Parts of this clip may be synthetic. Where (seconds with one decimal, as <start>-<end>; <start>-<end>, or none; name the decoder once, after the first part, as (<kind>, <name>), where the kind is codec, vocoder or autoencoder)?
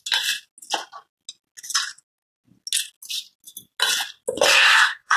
4.5-5.2 (codec, SNAC)